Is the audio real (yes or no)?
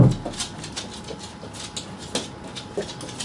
yes